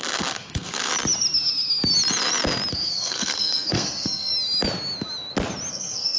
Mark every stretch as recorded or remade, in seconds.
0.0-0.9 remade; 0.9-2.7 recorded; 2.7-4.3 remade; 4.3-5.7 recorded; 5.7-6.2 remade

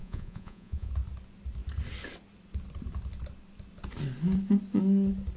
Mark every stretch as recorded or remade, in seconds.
0.0-0.9 remade; 0.9-5.4 recorded

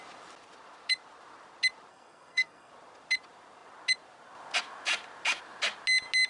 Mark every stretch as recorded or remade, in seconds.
0.0-1.9 recorded; 1.9-2.7 remade; 2.7-6.3 recorded

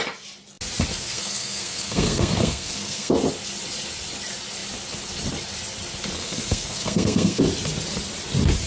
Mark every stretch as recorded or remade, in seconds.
0.0-0.9 recorded; 0.9-3.1 remade; 3.1-6.2 recorded; 6.2-7.4 remade; 7.4-8.7 recorded

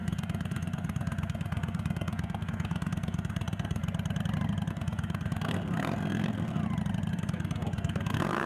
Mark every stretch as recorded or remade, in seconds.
0.0-3.8 remade; 3.8-4.7 recorded; 4.7-6.6 remade; 6.6-7.1 recorded; 7.1-8.5 remade

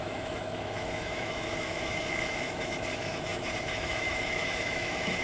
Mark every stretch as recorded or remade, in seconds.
0.0-5.2 remade

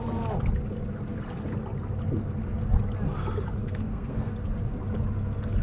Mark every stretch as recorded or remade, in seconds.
0.0-3.6 recorded; 3.6-4.3 remade; 4.3-5.6 recorded